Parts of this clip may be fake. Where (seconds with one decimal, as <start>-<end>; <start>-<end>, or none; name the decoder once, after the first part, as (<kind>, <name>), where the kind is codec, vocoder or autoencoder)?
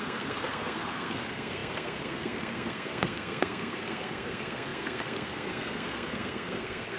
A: 0.0-7.0 (codec, SNAC)